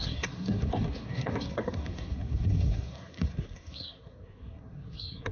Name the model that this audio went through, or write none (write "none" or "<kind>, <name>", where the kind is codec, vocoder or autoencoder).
codec, SNAC